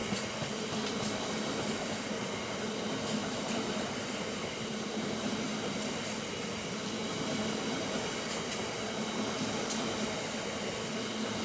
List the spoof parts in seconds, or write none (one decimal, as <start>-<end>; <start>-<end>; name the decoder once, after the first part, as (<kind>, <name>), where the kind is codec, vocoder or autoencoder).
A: 3.2-5.3 (vocoder, BigVGAN v2)